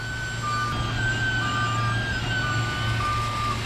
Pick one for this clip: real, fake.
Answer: real